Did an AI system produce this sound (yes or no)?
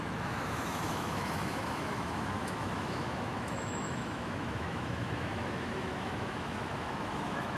yes